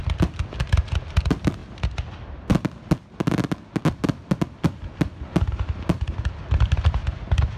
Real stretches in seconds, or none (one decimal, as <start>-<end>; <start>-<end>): 0.0-7.6